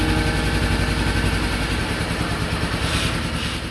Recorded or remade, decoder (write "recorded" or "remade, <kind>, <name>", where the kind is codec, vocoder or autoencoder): recorded